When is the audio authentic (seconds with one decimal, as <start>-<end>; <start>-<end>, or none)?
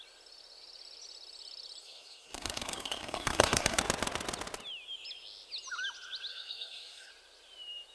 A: 0.0-1.8; 3.8-6.3; 7.1-7.9